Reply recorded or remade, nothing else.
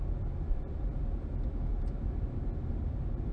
recorded